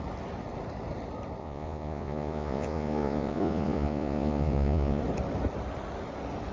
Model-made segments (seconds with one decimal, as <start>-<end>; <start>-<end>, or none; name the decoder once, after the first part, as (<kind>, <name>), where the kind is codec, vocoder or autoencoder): 1.4-5.0 (vocoder, Vocos)